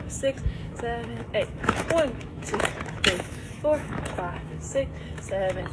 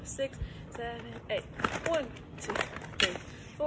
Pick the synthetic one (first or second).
first